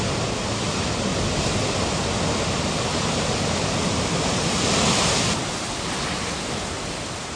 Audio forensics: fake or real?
real